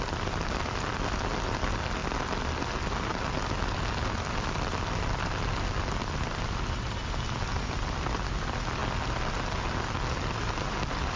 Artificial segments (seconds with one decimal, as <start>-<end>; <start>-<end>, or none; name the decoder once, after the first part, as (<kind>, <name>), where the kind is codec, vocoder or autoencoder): none

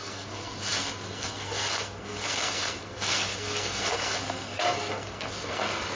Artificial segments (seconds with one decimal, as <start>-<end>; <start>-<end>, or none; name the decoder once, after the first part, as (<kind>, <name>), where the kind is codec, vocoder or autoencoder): 0.0-6.0 (codec, SNAC)

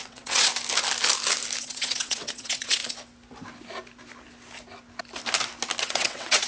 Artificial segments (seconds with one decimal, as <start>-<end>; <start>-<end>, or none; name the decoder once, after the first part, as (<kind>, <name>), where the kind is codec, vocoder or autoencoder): 0.0-0.5 (vocoder, WaveNeXt); 1.6-2.8; 5.8-6.5